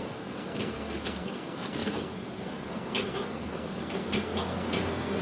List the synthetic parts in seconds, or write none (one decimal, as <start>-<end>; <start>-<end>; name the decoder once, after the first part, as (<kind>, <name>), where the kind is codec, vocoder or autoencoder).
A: 0.0-5.2 (codec, SNAC)